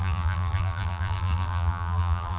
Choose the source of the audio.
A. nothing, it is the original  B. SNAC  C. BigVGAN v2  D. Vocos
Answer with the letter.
C